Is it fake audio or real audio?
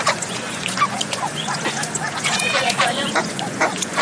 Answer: fake